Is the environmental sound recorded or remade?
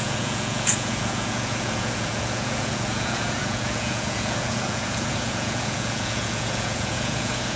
remade